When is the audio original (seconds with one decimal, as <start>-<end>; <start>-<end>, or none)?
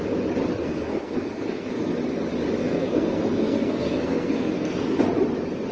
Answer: 0.0-0.6; 1.9-2.6; 5.0-5.7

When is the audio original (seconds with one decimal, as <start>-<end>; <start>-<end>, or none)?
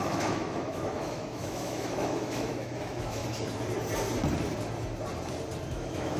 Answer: 3.2-5.7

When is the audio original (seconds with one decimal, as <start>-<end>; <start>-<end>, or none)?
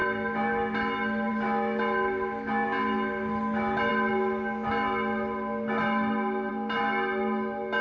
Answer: 0.0-7.8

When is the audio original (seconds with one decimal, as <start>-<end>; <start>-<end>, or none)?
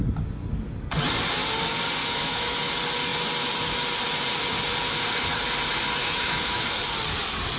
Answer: 0.0-2.0; 2.7-6.0; 6.7-7.6